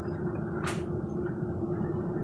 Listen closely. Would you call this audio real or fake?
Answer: real